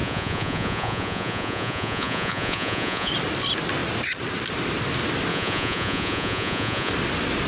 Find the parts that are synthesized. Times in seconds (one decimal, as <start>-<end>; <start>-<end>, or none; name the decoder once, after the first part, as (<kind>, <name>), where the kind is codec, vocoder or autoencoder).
0.0-3.1 (vocoder, Vocos); 5.3-6.9

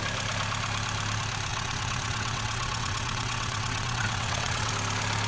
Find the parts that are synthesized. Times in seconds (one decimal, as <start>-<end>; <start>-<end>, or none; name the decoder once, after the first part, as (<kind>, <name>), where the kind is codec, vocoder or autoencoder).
1.5-4.7 (vocoder, WaveNeXt)

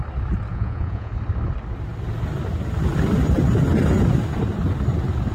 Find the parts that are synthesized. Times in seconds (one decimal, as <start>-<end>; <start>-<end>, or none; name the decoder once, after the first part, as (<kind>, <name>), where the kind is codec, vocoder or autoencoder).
0.5-1.1 (vocoder, Vocos)